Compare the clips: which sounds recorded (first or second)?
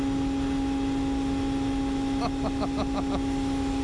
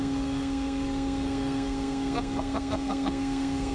first